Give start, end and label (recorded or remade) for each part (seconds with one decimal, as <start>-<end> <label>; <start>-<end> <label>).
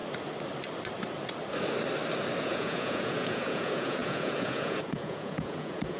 0.0-2.4 recorded; 2.4-6.0 remade